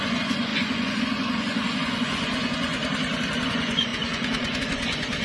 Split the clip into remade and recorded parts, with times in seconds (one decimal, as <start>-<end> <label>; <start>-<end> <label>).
0.0-2.8 remade; 2.8-3.5 recorded; 3.5-5.2 remade